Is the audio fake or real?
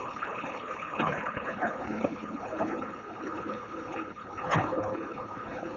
fake